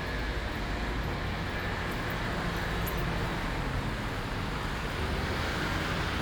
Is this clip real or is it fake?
real